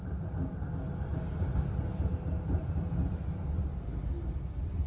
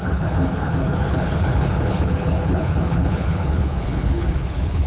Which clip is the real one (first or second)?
first